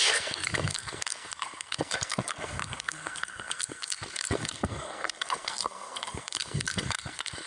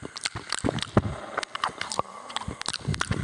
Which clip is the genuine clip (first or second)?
second